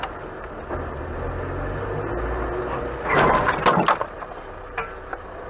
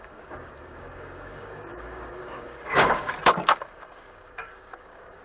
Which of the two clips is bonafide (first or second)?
first